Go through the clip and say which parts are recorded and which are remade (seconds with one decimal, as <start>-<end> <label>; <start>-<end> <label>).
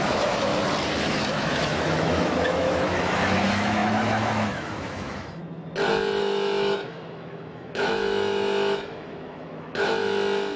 0.0-0.5 remade; 0.5-1.1 recorded; 1.1-5.4 remade; 5.4-6.2 recorded; 6.2-10.6 remade